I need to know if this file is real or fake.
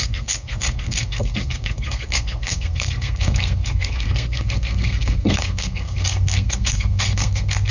fake